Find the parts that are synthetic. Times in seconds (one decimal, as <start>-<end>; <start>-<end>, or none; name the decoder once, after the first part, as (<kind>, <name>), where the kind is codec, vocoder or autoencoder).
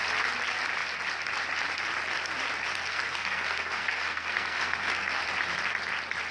2.7-5.2 (codec, SNAC)